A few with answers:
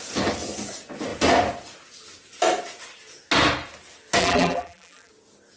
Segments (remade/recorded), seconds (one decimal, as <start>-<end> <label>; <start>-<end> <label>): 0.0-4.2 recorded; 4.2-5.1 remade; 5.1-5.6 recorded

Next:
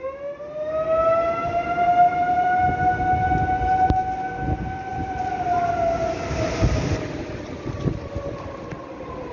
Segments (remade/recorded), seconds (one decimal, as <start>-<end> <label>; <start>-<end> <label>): 0.0-1.4 recorded; 1.4-2.7 remade; 2.7-4.9 recorded; 4.9-5.7 remade; 5.7-9.3 recorded

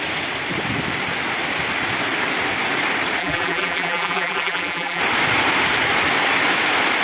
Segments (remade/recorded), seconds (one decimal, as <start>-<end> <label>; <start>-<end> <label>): 0.0-3.2 recorded; 3.2-5.0 remade; 5.0-7.0 recorded